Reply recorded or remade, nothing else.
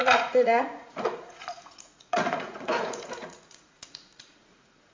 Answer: remade